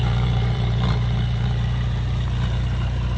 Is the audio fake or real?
fake